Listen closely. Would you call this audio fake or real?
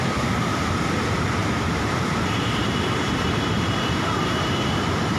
fake